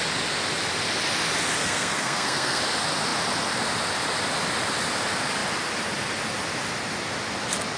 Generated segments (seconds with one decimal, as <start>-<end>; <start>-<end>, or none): 1.6-2.6